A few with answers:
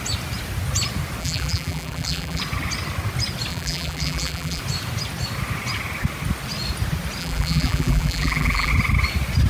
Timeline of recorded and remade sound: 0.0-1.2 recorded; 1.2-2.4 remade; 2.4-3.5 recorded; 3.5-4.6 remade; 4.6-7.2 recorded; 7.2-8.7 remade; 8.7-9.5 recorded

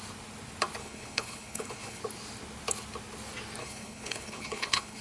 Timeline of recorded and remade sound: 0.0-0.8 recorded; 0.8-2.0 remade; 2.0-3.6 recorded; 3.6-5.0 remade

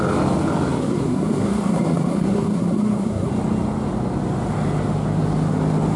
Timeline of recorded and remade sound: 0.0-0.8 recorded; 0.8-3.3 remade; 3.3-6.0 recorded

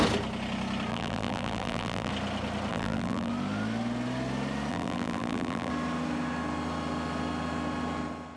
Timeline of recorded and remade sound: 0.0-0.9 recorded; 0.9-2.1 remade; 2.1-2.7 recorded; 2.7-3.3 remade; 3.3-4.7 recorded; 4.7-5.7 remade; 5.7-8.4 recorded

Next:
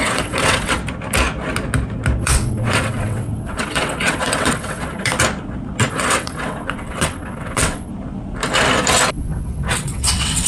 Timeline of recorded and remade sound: 0.0-0.8 remade; 0.8-2.2 recorded; 2.2-5.1 remade; 5.1-5.9 recorded; 5.9-7.9 remade; 7.9-9.1 recorded; 9.1-10.5 remade

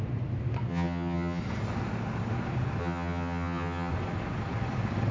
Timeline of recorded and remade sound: 0.0-0.7 recorded; 0.7-1.4 remade; 1.4-2.8 recorded; 2.8-3.9 remade; 3.9-5.1 recorded